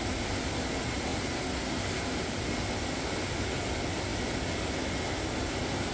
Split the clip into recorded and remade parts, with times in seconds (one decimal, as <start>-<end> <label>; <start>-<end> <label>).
0.0-5.9 recorded